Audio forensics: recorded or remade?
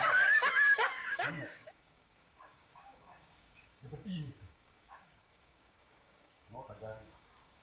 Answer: remade